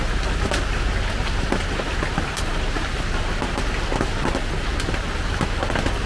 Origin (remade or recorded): recorded